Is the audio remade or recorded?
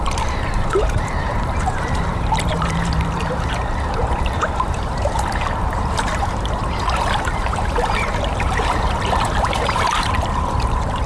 remade